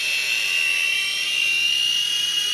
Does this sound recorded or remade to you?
recorded